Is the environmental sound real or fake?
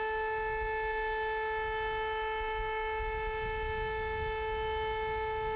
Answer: real